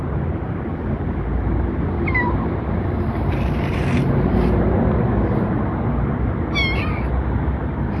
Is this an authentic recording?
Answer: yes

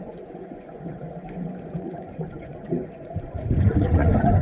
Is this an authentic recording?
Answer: no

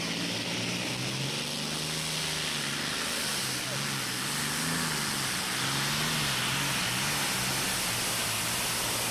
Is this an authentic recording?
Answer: yes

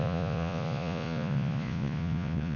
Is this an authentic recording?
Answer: no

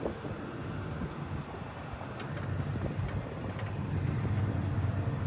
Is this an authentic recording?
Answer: yes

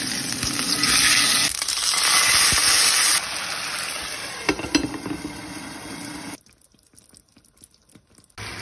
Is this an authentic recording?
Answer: yes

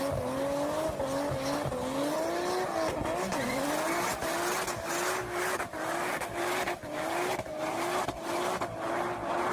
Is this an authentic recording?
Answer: yes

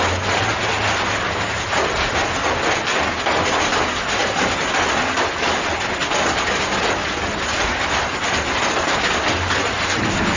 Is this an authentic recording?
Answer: yes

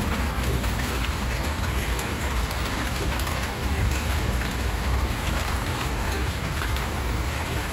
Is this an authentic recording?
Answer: no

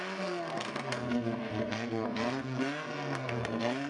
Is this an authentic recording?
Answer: no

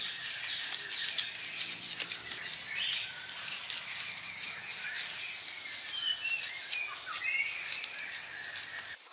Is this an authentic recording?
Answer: yes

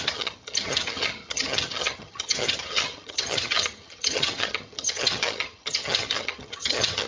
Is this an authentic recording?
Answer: no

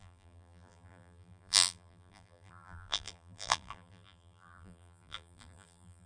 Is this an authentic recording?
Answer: no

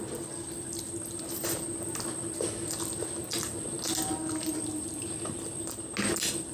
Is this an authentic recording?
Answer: yes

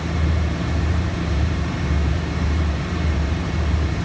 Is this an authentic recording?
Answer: no